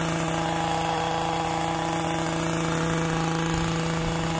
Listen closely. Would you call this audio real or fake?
real